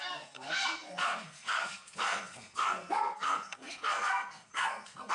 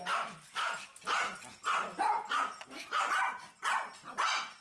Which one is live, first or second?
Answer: second